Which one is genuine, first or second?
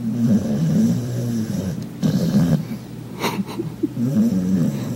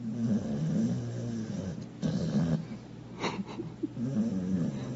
second